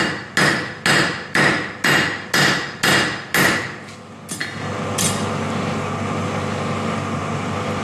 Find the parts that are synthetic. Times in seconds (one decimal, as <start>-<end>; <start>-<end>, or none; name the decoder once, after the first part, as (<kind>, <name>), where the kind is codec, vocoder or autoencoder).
none